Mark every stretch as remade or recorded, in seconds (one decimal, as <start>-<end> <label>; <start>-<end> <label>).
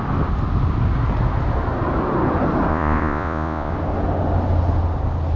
0.0-2.7 recorded; 2.7-3.7 remade; 3.7-5.4 recorded